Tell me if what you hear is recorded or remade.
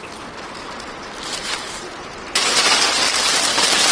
recorded